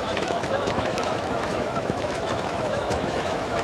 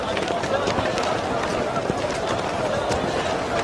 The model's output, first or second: first